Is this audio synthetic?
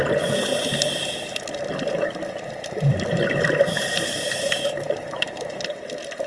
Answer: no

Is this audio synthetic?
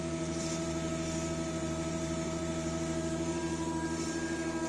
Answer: yes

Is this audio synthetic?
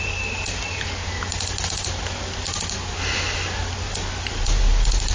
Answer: no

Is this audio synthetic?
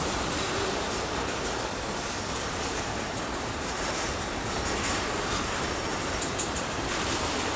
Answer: yes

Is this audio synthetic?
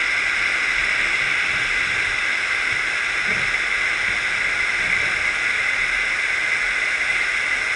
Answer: no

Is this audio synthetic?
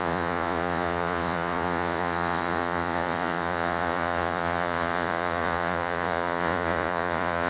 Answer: yes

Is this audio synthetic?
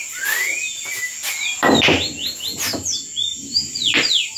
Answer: no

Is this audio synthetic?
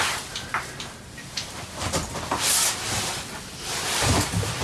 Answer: no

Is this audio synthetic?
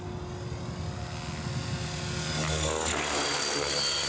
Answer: no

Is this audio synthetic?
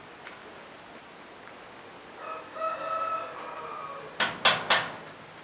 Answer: no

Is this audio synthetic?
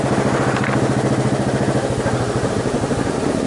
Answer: no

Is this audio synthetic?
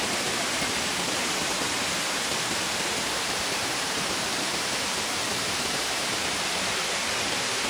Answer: yes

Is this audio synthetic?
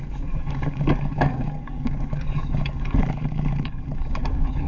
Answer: yes